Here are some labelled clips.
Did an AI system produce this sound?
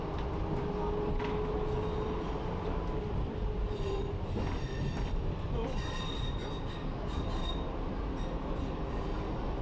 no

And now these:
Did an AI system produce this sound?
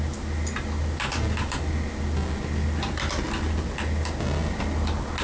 no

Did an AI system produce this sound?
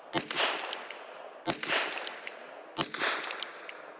no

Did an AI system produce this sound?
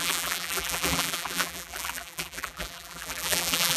yes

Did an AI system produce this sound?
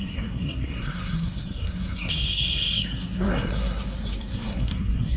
yes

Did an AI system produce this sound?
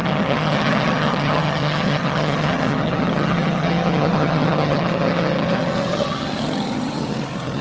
yes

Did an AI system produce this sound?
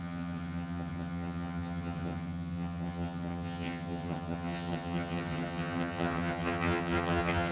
yes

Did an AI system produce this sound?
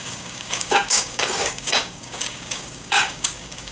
yes